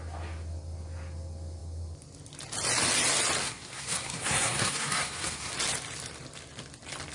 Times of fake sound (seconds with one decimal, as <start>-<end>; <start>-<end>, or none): 3.4-5.5